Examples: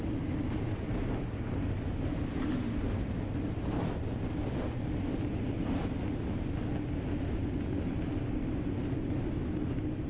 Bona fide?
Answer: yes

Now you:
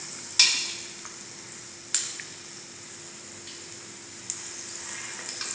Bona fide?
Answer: yes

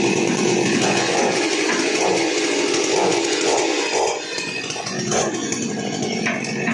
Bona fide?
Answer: no